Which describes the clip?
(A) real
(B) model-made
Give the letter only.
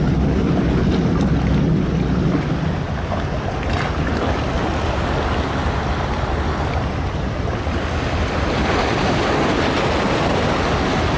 A